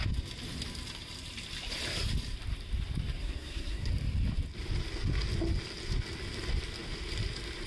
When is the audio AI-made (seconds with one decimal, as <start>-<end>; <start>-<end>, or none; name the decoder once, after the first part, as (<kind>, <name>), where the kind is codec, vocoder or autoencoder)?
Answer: 3.2-3.9 (codec, SNAC)

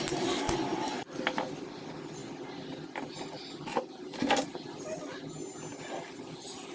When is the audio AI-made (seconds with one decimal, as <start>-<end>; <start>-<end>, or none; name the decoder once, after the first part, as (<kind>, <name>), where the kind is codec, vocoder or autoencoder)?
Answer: none

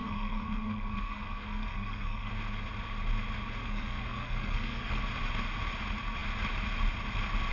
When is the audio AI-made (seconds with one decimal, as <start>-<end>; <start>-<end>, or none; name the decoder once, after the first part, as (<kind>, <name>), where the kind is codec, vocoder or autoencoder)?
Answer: 0.0-2.3 (codec, SNAC); 3.6-5.0